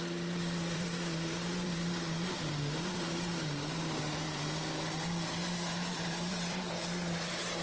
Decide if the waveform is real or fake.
fake